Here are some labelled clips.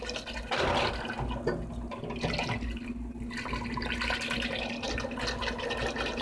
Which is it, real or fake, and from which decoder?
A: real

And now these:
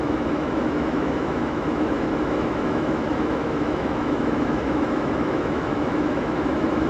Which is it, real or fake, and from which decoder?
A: fake, autoencoder, DAC-VAE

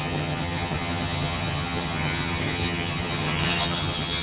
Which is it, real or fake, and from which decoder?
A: fake, vocoder, HiFi-GAN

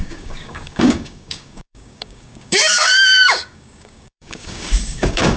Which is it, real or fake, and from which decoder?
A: fake, codec, DAC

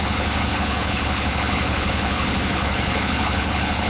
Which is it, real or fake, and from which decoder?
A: fake, codec, HILCodec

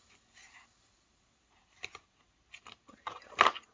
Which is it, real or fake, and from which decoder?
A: real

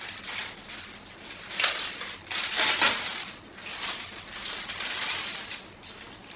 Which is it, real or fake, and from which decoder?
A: real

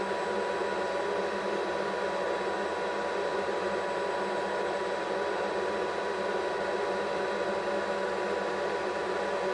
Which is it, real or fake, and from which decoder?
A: real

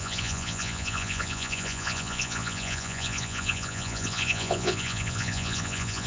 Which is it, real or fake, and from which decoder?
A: fake, vocoder, Vocos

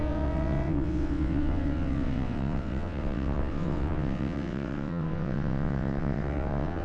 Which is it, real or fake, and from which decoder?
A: fake, vocoder, WaveNeXt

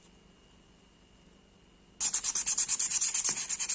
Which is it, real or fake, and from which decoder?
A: real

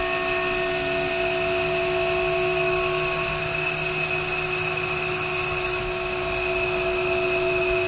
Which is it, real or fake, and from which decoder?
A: real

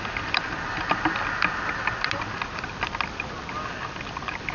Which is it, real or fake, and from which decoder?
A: real